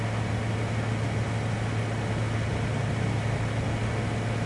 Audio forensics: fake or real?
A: real